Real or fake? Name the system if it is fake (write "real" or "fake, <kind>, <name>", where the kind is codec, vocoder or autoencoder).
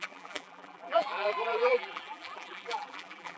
fake, vocoder, BigVGAN v2